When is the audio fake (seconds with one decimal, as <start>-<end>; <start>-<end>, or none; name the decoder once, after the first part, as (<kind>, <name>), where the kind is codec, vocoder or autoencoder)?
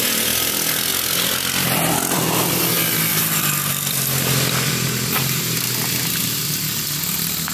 none